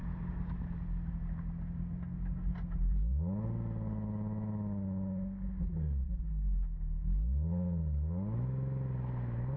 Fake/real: real